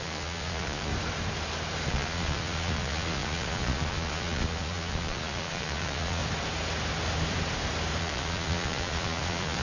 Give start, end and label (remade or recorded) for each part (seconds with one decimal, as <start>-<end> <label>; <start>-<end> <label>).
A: 0.0-0.9 remade; 0.9-1.9 recorded; 1.9-6.2 remade; 6.2-8.0 recorded; 8.0-9.6 remade

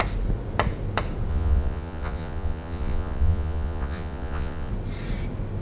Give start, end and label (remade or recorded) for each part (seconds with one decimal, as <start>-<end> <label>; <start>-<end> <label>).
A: 0.0-1.3 recorded; 1.3-4.7 remade; 4.7-5.6 recorded

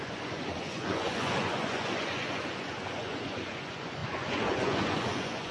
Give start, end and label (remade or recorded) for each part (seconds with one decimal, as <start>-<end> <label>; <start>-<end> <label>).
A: 0.0-5.5 remade

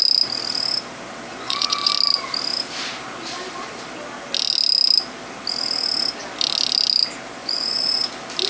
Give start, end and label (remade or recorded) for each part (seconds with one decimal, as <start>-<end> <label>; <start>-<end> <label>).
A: 0.0-1.3 recorded; 1.3-1.9 remade; 1.9-7.4 recorded; 7.4-8.0 remade; 8.0-8.5 recorded

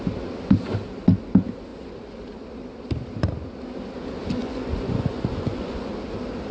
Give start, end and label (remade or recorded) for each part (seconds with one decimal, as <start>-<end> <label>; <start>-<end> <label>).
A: 0.0-4.4 recorded; 4.4-5.9 remade; 5.9-6.5 recorded